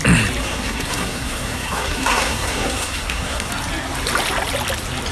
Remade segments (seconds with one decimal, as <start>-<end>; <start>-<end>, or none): 0.4-3.5

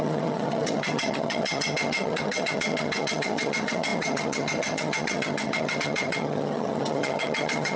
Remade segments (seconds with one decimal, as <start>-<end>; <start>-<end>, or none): 0.0-7.8

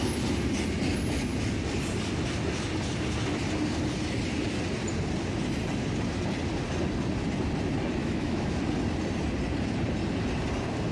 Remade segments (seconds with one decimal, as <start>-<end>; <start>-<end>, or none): 8.0-8.6

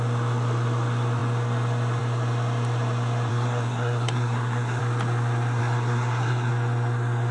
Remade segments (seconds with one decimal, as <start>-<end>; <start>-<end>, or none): 3.3-4.8; 5.6-6.5

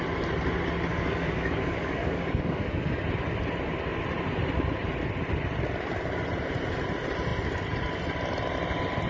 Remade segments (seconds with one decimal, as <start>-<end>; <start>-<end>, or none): 0.9-3.0

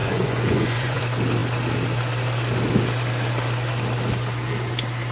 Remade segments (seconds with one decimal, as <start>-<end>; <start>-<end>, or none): 0.0-1.0

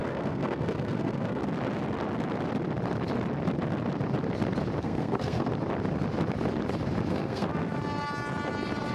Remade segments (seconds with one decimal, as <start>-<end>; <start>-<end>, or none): 0.0-1.4; 4.8-5.5; 7.1-7.5

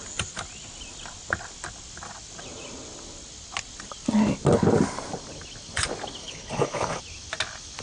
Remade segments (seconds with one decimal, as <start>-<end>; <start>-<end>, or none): 6.2-7.0